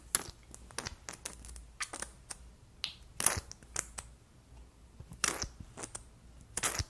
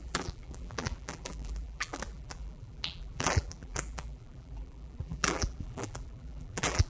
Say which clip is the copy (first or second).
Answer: second